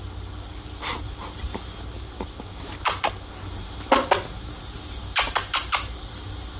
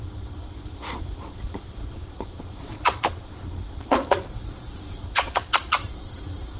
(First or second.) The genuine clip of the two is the first